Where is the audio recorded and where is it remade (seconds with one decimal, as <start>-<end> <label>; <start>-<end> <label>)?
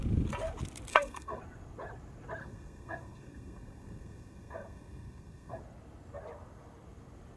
0.0-0.9 recorded; 0.9-1.4 remade; 1.4-2.4 recorded; 2.4-5.6 remade; 5.6-7.4 recorded